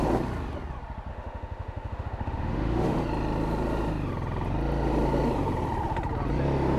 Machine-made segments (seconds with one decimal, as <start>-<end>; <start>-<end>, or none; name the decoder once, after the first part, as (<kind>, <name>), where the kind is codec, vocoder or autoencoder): 1.1-3.0 (autoencoder, DAC-VAE)